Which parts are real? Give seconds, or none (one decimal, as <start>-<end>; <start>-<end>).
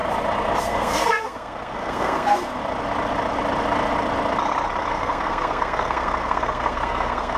0.0-0.6; 2.6-4.9